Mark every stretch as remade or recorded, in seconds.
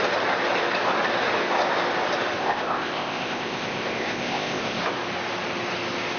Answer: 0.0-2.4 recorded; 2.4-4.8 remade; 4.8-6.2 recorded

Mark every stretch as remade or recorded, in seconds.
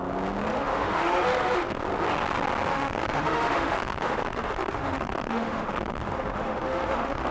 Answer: 0.0-0.5 recorded; 0.5-1.8 remade; 1.8-2.7 recorded; 2.7-7.3 remade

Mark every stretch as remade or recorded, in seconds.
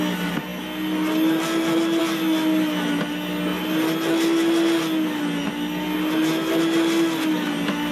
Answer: 0.0-7.9 recorded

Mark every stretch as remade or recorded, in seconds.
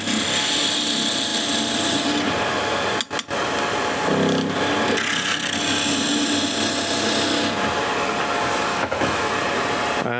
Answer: 0.0-8.7 recorded; 8.7-9.3 remade; 9.3-10.2 recorded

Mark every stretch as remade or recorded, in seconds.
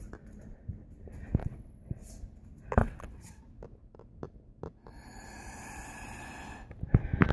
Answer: 0.0-1.4 recorded; 1.4-2.1 remade; 2.1-2.8 recorded; 2.8-3.4 remade; 3.4-7.3 recorded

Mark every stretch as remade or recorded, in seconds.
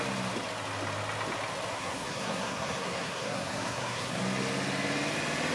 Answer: 0.0-1.7 recorded; 1.7-4.2 remade; 4.2-5.5 recorded